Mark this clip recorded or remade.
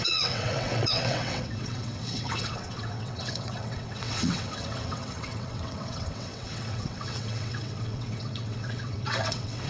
remade